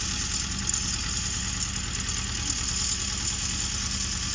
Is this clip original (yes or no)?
yes